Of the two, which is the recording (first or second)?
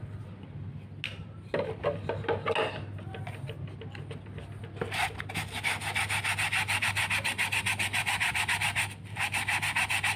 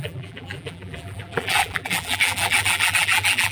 first